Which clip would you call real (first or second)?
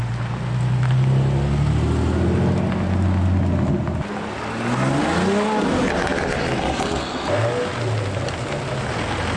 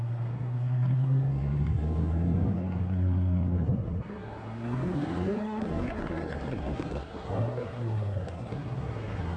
first